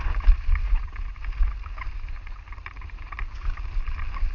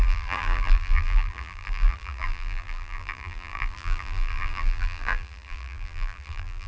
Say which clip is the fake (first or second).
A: second